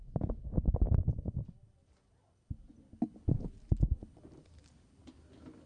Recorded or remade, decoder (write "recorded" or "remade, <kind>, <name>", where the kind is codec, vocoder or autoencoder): recorded